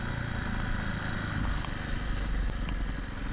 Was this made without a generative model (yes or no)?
yes